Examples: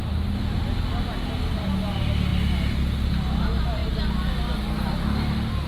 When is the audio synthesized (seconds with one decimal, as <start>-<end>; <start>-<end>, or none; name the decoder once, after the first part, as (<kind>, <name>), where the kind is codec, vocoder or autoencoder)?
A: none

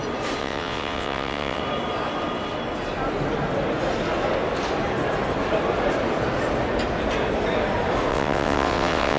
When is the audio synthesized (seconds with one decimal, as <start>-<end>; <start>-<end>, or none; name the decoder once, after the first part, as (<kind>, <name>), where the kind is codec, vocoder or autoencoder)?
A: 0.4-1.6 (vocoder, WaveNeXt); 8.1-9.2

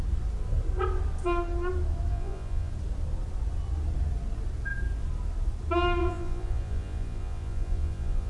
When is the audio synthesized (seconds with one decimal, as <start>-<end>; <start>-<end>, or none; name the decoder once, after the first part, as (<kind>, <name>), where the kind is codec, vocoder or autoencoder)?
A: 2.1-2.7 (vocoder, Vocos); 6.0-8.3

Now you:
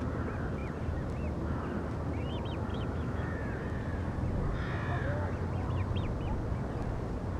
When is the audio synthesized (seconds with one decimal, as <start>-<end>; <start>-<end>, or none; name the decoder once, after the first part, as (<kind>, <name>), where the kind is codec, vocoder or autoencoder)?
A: 2.7-3.5 (autoencoder, DAC-VAE)